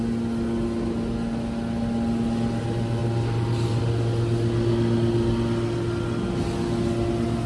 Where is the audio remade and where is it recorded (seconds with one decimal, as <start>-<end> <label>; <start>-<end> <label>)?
0.0-7.5 recorded